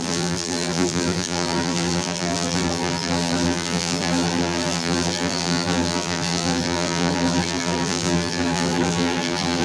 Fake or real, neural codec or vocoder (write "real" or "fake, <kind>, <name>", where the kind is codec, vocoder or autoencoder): fake, vocoder, BigVGAN v2